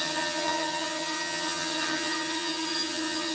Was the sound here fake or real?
fake